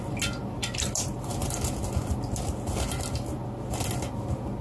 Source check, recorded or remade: recorded